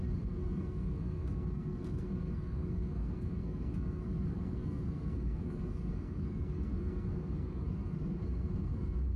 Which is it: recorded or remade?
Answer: remade